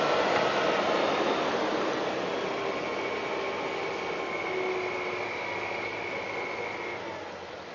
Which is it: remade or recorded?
recorded